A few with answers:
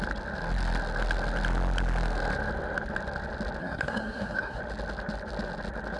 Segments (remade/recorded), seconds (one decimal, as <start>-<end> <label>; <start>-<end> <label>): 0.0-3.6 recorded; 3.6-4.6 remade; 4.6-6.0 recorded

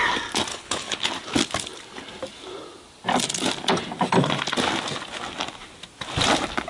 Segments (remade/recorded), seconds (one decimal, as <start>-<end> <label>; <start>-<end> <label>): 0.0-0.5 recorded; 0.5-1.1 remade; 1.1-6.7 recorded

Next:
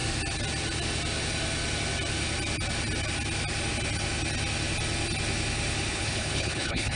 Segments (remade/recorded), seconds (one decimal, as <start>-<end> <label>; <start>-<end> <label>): 0.0-5.9 recorded; 5.9-7.0 remade

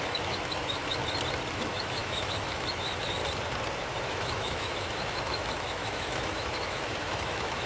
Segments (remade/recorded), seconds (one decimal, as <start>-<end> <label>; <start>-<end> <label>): 0.0-1.0 remade; 1.0-1.5 recorded; 1.5-3.2 remade; 3.2-4.0 recorded; 4.0-7.7 remade